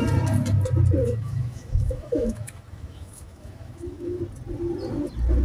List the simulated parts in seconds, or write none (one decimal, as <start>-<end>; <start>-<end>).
1.0-4.2